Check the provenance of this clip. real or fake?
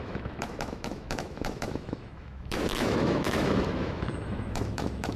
fake